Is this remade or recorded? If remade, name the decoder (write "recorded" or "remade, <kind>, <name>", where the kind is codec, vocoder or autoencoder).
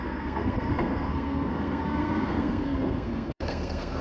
remade, codec, SNAC